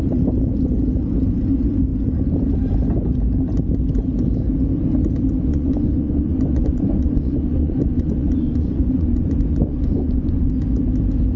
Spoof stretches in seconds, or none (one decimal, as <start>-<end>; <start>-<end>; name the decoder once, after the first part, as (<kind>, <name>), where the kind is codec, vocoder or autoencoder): 5.5-10.5 (vocoder, Vocos)